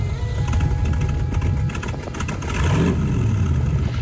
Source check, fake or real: real